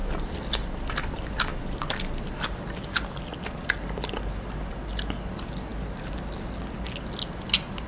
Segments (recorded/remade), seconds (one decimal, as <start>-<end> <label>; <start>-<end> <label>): 0.0-4.7 remade; 4.7-7.9 recorded